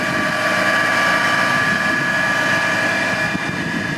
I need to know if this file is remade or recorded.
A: recorded